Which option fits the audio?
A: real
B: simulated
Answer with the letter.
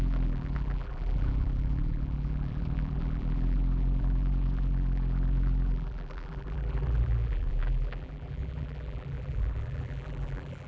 B